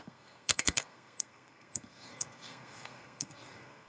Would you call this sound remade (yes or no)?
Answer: yes